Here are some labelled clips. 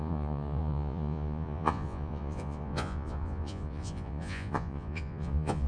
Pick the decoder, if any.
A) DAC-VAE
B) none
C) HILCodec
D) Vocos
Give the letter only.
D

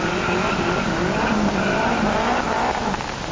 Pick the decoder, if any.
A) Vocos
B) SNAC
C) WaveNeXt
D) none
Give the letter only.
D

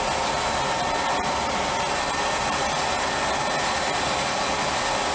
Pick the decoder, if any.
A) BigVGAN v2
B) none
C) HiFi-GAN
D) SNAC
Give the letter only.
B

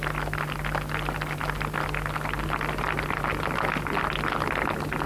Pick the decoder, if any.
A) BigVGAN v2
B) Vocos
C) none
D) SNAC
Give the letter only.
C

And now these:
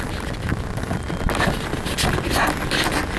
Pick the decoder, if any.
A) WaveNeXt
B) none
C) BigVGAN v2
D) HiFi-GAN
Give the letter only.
B